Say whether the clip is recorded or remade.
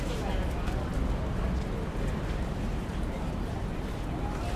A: recorded